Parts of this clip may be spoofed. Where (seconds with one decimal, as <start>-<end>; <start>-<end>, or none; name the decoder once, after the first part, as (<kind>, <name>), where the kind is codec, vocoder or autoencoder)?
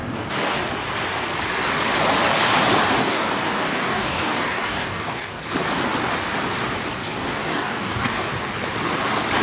0.0-0.6 (codec, DAC); 3.0-5.4; 7.0-8.3